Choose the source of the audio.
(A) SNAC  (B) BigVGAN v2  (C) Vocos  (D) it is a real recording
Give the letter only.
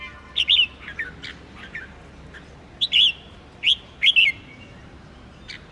D